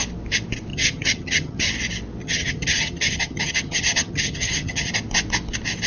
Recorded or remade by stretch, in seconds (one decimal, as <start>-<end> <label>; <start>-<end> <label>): 0.0-0.7 recorded; 0.7-1.7 remade; 1.7-2.2 recorded; 2.2-4.9 remade; 4.9-5.9 recorded